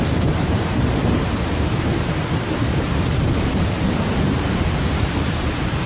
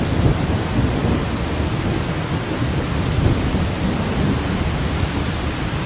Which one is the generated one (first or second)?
first